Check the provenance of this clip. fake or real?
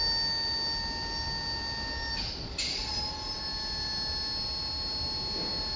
real